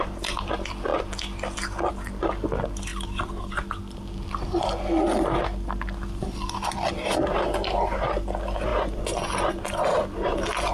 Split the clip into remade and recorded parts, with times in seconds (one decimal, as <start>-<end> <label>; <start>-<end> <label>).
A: 0.0-10.7 recorded